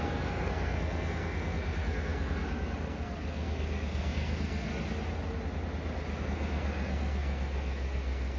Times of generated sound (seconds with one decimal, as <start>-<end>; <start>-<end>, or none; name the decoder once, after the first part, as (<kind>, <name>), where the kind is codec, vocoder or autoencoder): 0.0-4.7 (codec, SNAC); 6.2-8.4